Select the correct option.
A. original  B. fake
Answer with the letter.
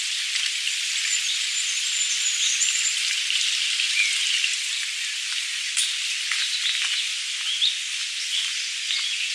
A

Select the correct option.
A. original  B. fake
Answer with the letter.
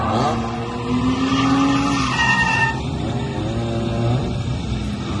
A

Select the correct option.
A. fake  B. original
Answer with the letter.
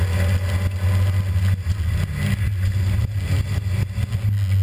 B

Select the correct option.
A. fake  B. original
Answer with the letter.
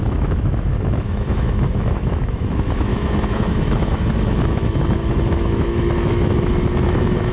A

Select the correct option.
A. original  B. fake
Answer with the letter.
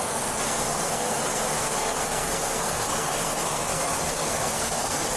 B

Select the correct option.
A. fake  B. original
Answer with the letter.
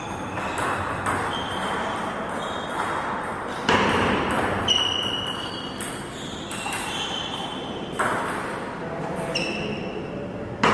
A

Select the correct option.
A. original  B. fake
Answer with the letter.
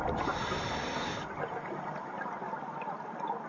A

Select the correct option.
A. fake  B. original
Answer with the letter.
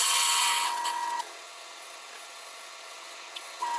A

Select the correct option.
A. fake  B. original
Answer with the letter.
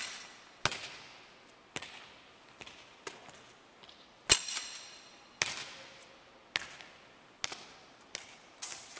B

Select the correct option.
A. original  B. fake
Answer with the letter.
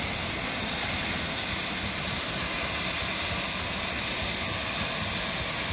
A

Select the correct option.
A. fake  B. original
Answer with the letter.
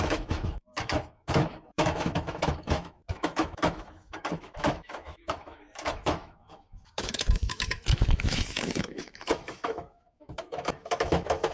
A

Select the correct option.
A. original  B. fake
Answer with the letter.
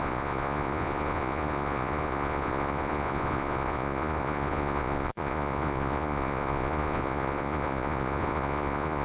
B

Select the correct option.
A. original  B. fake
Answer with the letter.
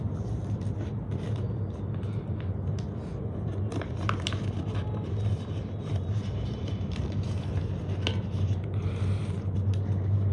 A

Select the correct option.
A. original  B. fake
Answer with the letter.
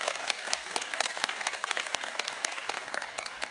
B